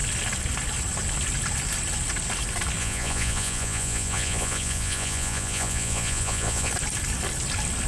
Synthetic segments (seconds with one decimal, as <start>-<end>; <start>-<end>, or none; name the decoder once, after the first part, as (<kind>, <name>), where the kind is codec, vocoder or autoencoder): 2.8-6.7 (vocoder, Vocos)